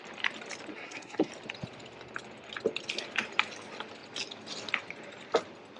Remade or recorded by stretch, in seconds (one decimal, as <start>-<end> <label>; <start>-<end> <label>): 0.0-0.7 recorded; 0.7-1.3 remade; 1.3-5.8 recorded